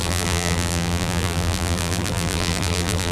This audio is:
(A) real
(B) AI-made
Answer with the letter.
B